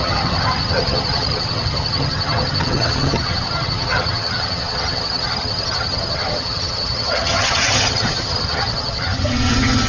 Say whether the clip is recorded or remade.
remade